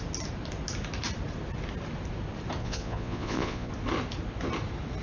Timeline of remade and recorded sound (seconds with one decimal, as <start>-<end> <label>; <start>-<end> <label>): 0.0-2.6 recorded; 2.6-3.7 remade; 3.7-5.0 recorded